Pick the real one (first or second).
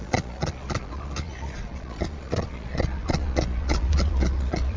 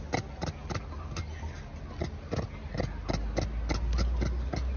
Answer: second